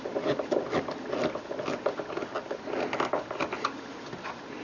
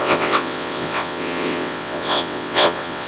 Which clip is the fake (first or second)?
second